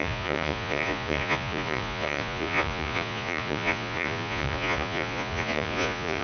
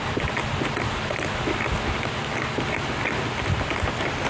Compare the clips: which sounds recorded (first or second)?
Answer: second